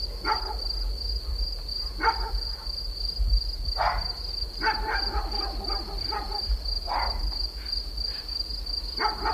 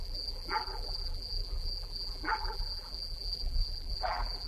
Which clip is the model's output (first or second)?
second